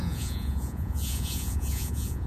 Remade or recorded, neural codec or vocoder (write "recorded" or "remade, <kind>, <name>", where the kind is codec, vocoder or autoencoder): remade, vocoder, Vocos